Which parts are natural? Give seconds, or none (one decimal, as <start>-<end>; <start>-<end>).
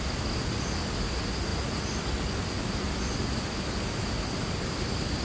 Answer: 0.0-5.2